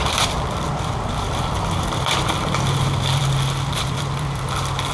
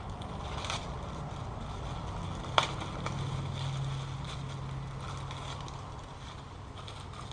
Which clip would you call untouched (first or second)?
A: second